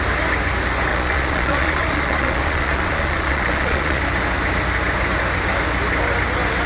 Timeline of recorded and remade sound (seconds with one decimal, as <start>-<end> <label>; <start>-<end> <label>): 0.0-0.9 recorded; 0.9-4.0 remade; 4.0-6.7 recorded